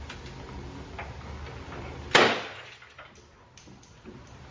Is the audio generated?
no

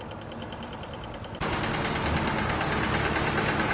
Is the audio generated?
no